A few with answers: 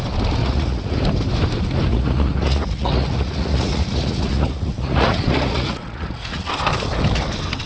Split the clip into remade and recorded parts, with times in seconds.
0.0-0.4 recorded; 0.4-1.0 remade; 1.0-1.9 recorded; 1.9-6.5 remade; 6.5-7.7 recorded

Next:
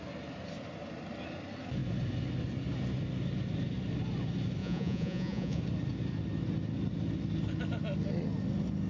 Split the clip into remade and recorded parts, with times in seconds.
0.0-4.6 recorded; 4.6-5.6 remade; 5.6-8.9 recorded